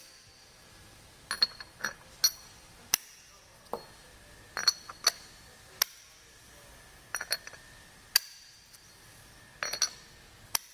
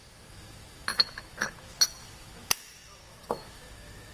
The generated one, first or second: second